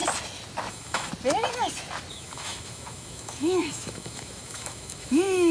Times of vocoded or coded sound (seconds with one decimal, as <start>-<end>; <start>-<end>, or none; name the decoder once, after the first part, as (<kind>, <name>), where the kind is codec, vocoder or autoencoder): 0.7-1.1 (autoencoder, DAC-VAE); 2.1-5.5